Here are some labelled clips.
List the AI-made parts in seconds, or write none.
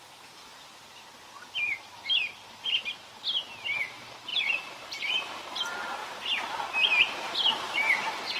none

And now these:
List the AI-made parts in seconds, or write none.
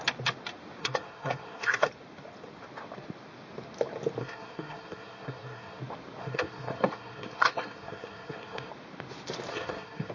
0.8-1.9; 4.2-5.8; 6.2-8.7; 9.5-10.1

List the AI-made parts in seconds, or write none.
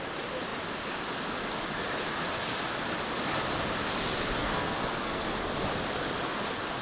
4.4-5.2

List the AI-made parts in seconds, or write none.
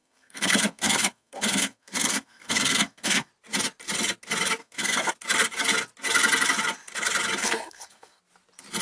0.0-3.3; 4.6-5.1; 7.4-8.2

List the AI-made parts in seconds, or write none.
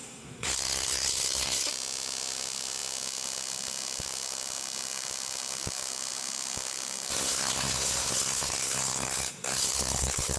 0.0-1.7; 7.1-10.4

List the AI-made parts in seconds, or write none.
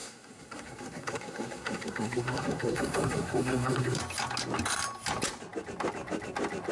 0.0-4.0